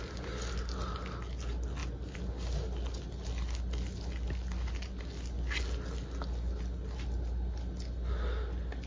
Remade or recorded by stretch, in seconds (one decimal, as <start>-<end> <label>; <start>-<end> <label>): 0.0-8.9 recorded